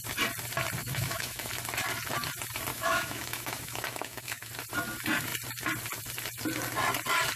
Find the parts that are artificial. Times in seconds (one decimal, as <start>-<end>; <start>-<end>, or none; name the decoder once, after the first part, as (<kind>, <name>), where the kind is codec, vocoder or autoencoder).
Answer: 0.8-1.5 (autoencoder, DAC-VAE); 2.7-4.5